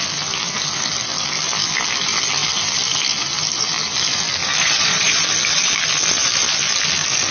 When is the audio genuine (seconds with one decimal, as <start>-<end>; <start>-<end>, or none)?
0.0-4.6; 5.2-7.3